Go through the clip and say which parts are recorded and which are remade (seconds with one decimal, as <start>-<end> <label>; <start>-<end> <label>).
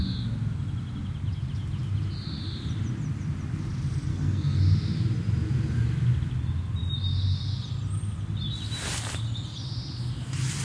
0.0-4.1 recorded; 4.1-4.6 remade; 4.6-10.6 recorded